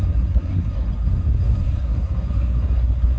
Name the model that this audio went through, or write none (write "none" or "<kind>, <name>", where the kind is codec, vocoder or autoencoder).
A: codec, SNAC